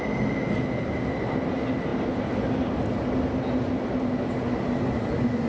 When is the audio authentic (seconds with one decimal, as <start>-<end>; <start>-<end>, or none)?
0.0-5.5